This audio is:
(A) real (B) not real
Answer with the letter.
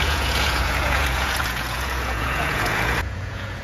B